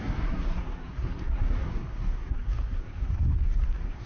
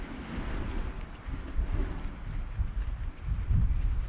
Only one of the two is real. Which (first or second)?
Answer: second